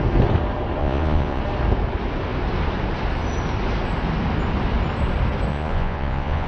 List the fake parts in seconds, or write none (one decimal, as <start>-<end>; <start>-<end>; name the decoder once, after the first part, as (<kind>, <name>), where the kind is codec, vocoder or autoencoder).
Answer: 0.8-1.4 (vocoder, Vocos); 5.5-6.5